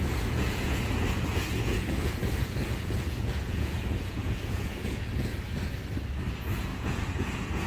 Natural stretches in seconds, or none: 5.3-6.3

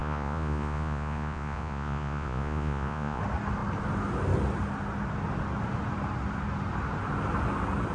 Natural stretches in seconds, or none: 3.2-7.9

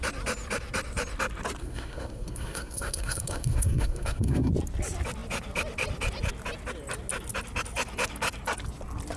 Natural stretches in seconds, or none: 0.0-1.6; 4.5-9.2